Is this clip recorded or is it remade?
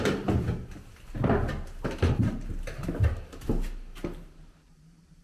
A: recorded